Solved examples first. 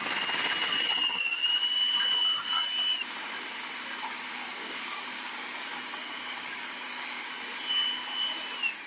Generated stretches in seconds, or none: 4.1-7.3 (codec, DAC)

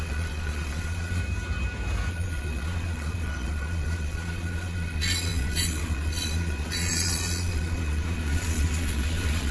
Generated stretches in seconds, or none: 0.0-1.2 (vocoder, Vocos); 2.1-9.5

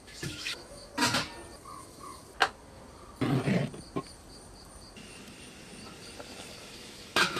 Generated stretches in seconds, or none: 0.0-0.9 (autoencoder, DAC-VAE); 1.8-2.2; 6.6-7.4

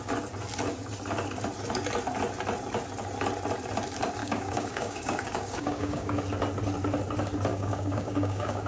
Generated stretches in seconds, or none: 4.2-6.2 (codec, DAC); 7.5-8.7

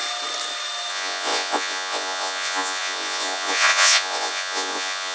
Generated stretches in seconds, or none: 0.9-5.1 (vocoder, Vocos)

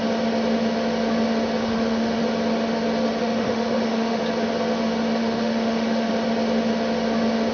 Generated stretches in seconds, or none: 1.6-2.2 (autoencoder, DAC-VAE); 3.2-4.2; 5.2-6.1

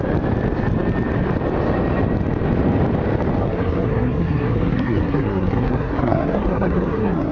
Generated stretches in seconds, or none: 3.4-7.3 (codec, SNAC)